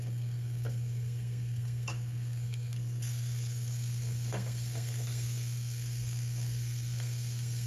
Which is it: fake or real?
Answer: fake